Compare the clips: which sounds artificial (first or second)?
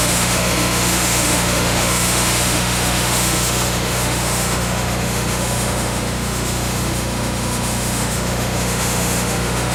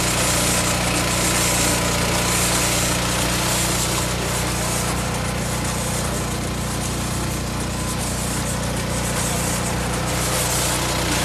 first